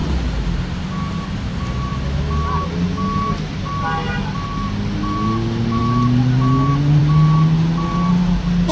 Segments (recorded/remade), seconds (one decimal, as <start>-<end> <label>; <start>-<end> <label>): 0.0-8.7 recorded